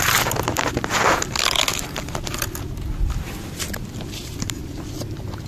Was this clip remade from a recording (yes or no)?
no